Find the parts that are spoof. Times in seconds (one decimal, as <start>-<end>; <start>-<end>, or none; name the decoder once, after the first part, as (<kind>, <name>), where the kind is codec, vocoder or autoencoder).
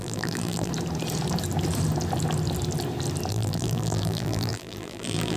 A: 0.0-0.7 (vocoder, BigVGAN v2); 3.3-5.4